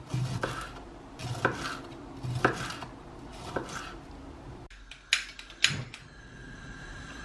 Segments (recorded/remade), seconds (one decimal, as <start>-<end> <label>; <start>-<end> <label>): 0.0-7.2 recorded